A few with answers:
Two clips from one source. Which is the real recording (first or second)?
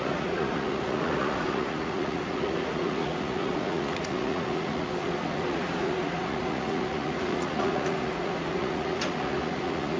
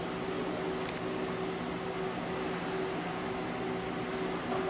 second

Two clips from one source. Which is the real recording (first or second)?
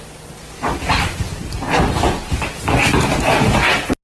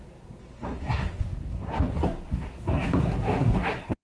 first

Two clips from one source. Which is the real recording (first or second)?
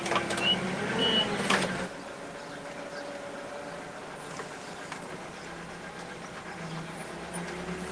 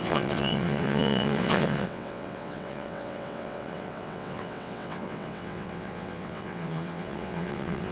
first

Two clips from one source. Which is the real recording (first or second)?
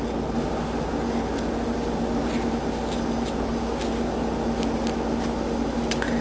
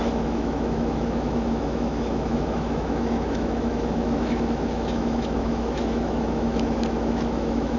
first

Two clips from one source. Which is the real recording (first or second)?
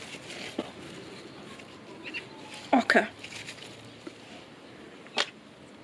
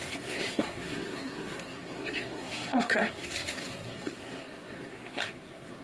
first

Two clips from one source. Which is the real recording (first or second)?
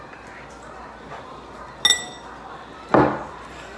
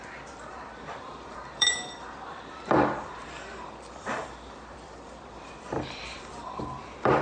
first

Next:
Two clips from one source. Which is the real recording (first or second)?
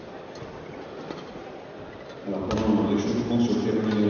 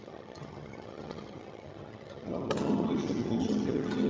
first